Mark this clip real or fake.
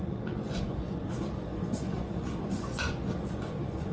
fake